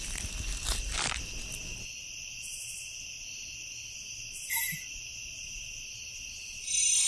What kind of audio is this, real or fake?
real